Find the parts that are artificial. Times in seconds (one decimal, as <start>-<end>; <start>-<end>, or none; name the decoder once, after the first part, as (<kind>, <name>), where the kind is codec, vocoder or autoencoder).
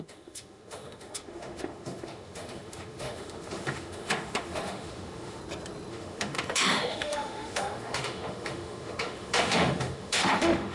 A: 0.0-5.4 (autoencoder, DAC-VAE); 5.9-10.7